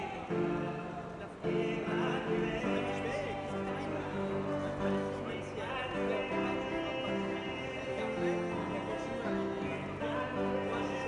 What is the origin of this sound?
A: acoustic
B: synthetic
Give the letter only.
A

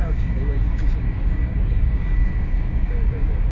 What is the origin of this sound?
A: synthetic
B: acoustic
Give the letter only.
A